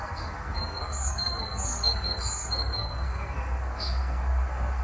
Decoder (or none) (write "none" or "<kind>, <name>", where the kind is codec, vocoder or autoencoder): codec, SNAC